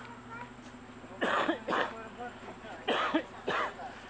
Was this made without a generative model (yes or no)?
yes